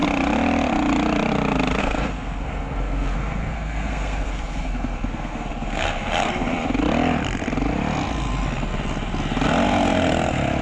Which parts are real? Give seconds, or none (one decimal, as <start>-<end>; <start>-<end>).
0.0-1.8; 6.3-10.6